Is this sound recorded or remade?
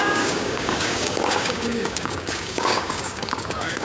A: remade